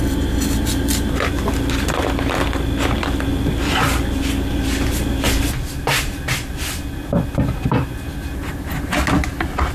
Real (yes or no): yes